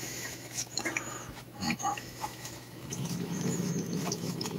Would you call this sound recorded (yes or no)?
no